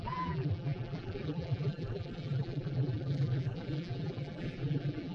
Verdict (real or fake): fake